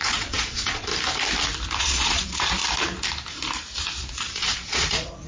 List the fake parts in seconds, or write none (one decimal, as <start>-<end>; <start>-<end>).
0.0-0.9; 1.8-2.6; 4.1-5.3